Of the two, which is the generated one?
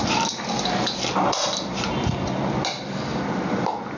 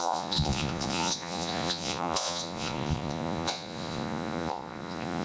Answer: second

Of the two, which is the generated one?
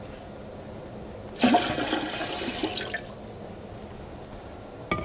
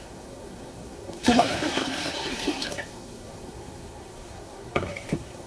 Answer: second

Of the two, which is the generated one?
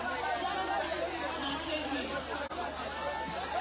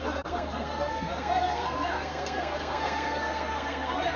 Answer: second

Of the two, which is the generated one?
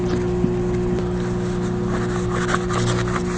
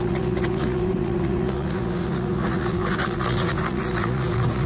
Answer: second